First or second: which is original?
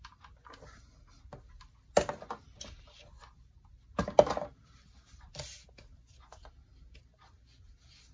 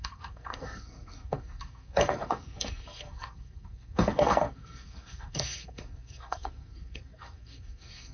first